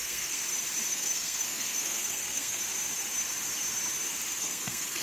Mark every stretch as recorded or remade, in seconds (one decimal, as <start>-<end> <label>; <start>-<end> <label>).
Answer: 0.0-0.4 remade; 0.4-0.9 recorded; 0.9-2.6 remade; 2.6-4.4 recorded; 4.4-5.0 remade